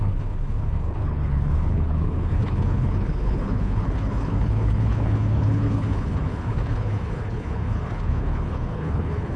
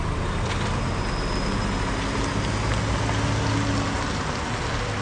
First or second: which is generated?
first